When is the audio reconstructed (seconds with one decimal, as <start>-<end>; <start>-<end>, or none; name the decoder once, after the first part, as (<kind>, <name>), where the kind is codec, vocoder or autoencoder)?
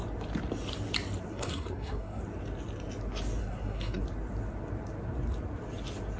1.3-2.2 (codec, SNAC); 3.4-4.0